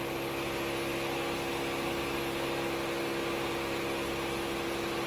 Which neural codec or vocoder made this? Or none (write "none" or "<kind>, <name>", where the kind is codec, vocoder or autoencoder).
none